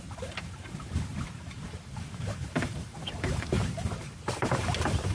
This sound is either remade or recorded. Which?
remade